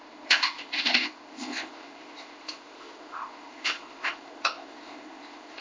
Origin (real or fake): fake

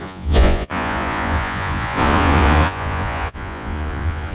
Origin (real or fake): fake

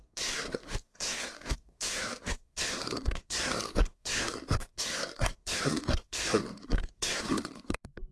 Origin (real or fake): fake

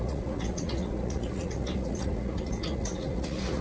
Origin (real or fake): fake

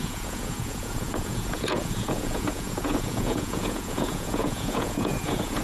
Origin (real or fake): fake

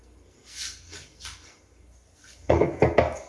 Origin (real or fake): fake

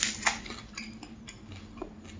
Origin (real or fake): real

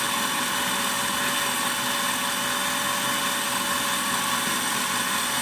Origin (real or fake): real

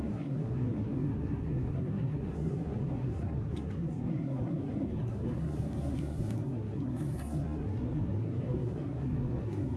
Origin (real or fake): fake